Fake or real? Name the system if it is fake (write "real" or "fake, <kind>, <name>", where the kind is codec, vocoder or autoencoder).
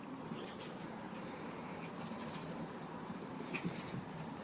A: fake, vocoder, BigVGAN v2